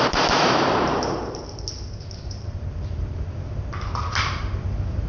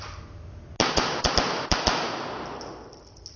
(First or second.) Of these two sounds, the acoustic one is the second